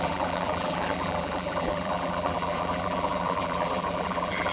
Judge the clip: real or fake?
fake